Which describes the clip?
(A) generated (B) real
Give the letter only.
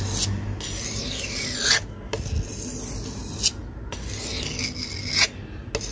B